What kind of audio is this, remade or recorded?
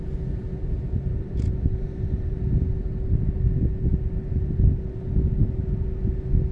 recorded